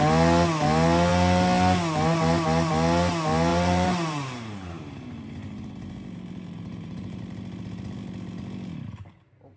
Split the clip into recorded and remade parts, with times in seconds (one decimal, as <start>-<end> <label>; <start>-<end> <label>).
0.0-3.5 recorded; 3.5-7.2 remade; 7.2-9.6 recorded